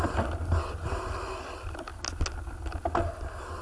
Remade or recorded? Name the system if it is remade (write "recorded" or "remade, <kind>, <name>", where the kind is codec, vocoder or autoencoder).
recorded